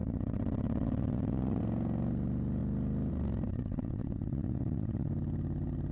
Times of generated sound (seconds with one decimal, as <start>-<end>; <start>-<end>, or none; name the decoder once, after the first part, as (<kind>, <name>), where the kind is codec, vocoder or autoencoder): 0.0-1.6 (vocoder, WaveNeXt); 3.5-5.1